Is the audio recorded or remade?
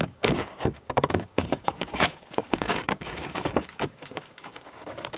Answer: remade